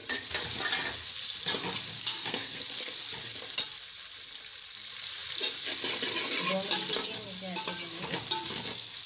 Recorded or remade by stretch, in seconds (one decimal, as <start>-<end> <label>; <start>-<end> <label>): 0.0-1.9 recorded; 1.9-2.6 remade; 2.6-9.1 recorded